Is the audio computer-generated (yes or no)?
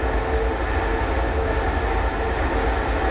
no